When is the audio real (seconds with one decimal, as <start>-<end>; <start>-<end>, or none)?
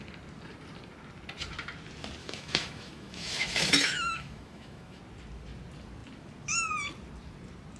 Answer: 0.0-2.2; 5.0-7.8